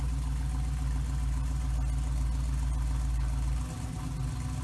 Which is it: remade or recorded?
recorded